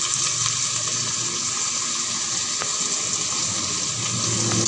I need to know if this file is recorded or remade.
recorded